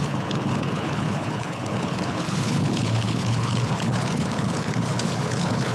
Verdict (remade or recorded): remade